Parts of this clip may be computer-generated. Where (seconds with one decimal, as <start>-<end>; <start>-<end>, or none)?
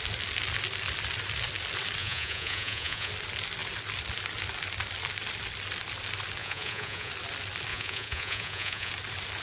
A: 2.0-3.1; 6.4-7.1; 7.7-8.9